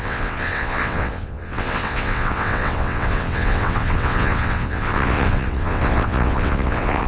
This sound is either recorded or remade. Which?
remade